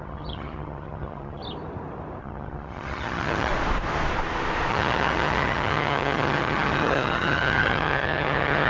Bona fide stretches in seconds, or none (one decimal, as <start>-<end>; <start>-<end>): 1.4-2.2; 3.5-4.7